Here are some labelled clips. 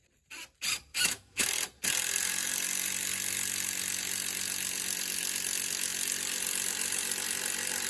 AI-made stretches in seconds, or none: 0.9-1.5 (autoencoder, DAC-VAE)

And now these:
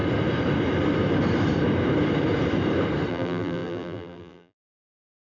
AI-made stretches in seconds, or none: 3.1-5.2 (vocoder, BigVGAN v2)

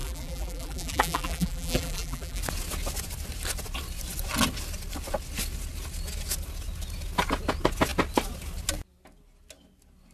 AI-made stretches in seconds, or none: 0.0-2.4 (vocoder, BigVGAN v2)